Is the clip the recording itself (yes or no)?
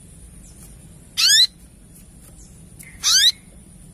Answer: yes